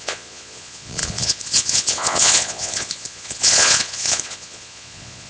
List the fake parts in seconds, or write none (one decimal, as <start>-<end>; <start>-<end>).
0.0-5.3